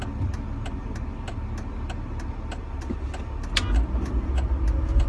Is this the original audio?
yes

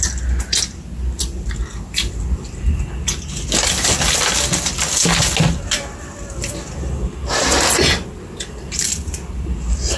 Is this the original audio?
yes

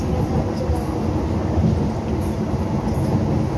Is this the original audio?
yes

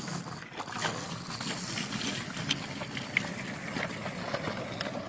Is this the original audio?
yes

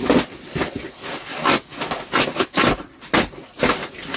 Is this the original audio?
yes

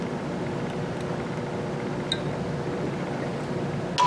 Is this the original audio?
yes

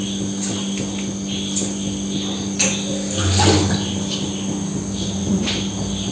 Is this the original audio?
yes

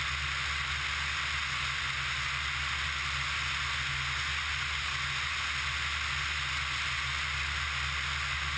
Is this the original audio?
yes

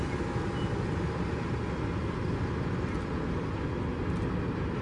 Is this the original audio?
yes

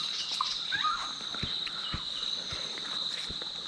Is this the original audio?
yes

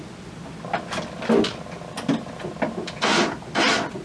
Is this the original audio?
yes